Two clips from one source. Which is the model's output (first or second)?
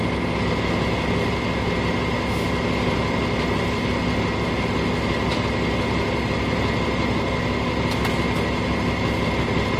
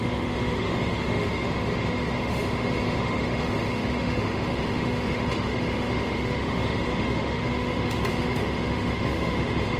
second